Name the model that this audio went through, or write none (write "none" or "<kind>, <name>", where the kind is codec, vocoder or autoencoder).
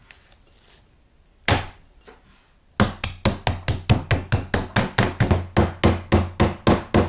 none